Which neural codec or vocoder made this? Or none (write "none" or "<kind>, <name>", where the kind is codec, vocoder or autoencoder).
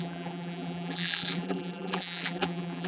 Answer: vocoder, BigVGAN v2